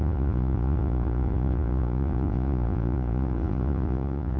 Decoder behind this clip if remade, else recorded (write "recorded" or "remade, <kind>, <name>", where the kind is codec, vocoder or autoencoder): remade, vocoder, Vocos